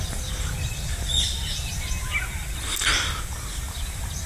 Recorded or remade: recorded